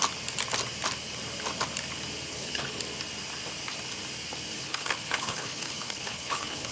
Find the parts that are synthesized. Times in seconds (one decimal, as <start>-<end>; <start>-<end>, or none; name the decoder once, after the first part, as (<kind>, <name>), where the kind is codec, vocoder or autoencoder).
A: 2.3-2.8 (codec, HILCodec); 4.5-6.7